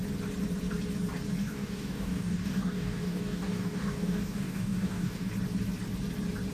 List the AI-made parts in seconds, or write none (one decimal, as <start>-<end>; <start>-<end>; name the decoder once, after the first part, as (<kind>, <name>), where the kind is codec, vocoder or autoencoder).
1.4-5.3 (codec, DAC)